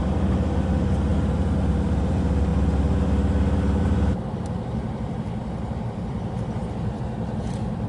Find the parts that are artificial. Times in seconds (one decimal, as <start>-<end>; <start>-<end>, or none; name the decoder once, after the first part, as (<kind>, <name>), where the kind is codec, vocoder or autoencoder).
none